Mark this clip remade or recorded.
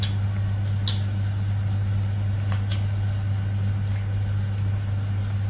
recorded